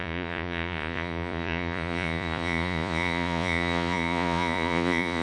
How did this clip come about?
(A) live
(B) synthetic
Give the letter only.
B